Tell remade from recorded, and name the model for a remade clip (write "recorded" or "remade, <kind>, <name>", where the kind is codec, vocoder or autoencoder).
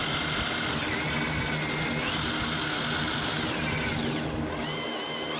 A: recorded